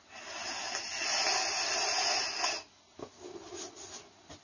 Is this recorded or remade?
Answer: recorded